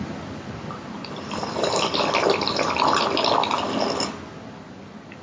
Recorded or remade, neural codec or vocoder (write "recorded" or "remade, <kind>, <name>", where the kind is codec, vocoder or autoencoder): recorded